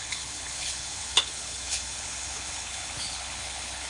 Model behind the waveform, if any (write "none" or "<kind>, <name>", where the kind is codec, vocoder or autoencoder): codec, HILCodec